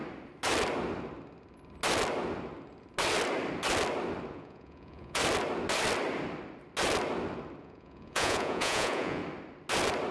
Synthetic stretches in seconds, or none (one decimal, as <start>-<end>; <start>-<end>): 4.3-5.2; 7.6-9.2